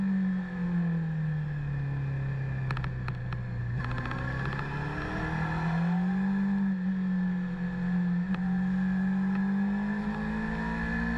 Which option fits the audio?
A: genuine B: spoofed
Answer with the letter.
A